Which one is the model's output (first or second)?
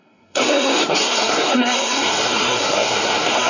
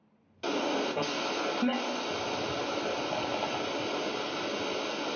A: first